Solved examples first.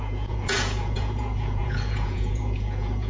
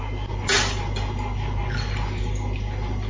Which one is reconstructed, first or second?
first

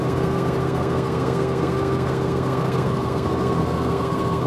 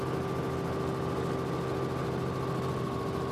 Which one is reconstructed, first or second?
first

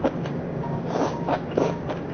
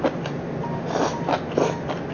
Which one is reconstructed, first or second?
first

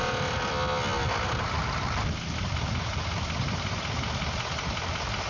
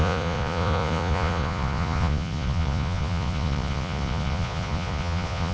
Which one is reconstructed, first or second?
second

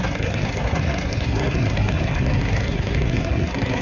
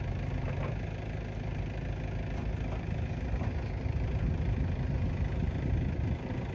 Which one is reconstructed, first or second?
first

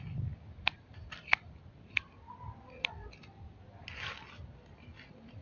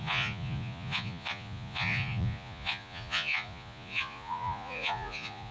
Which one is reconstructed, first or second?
second